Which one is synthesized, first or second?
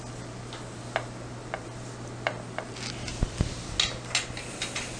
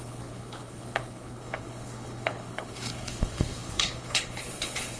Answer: second